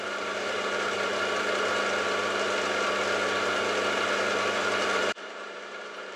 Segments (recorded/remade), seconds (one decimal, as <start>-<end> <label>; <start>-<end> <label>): 0.0-1.1 remade; 1.1-4.8 recorded; 4.8-6.2 remade